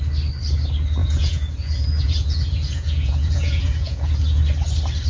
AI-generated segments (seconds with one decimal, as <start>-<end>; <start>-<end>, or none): 1.0-4.1